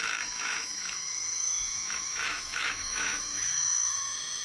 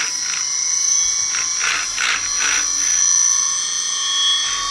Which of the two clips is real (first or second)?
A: second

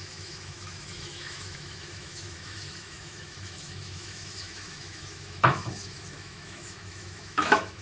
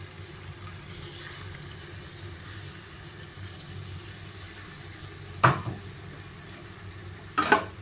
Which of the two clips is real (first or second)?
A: second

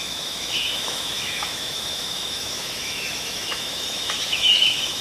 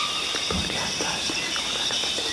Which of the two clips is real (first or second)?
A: second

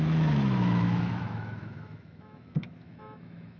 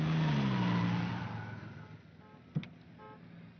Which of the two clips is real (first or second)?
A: second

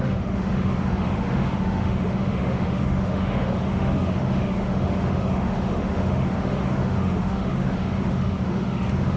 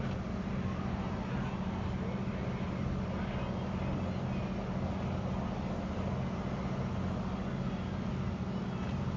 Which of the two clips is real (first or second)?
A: second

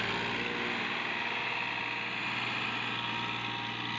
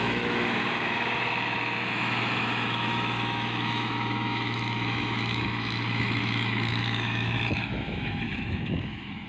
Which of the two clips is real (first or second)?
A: first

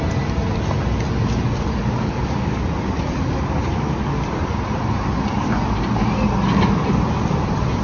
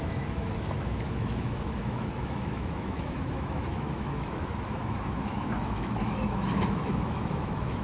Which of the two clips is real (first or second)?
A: first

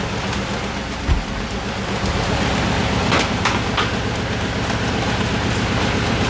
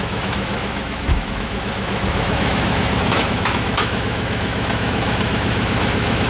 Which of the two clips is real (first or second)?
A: first